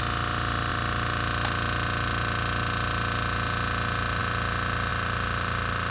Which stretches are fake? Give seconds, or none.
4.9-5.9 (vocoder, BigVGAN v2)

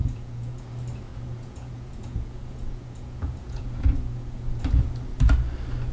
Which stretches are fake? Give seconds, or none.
0.0-0.6 (vocoder, Vocos); 1.1-4.6

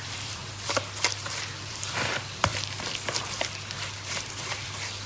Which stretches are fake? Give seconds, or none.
0.0-0.4 (vocoder, BigVGAN v2); 1.7-2.5; 4.1-5.1

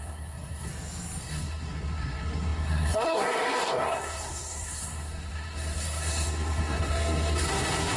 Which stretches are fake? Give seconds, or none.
0.0-0.7 (codec, SNAC); 1.2-8.0

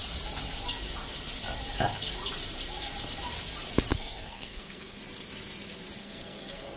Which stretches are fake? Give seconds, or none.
3.9-5.0 (codec, SNAC); 6.0-6.8